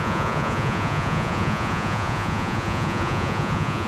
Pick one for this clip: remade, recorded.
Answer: remade